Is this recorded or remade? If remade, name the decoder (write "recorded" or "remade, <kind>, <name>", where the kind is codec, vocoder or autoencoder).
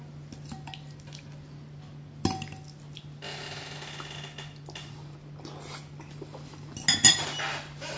recorded